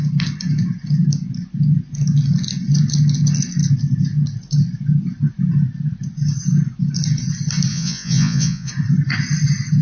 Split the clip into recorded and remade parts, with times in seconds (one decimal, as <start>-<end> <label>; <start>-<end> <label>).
0.0-7.7 recorded; 7.7-8.7 remade; 8.7-9.8 recorded